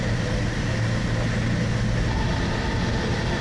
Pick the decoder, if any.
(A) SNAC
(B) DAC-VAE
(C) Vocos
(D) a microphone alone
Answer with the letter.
D